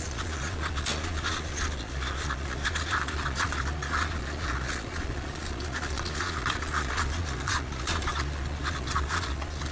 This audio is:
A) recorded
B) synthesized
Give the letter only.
B